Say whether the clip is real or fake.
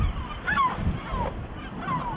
real